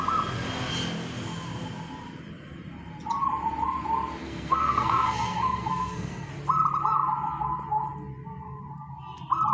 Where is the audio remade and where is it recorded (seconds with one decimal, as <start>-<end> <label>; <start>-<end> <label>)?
0.0-4.2 recorded; 4.2-6.3 remade; 6.3-9.5 recorded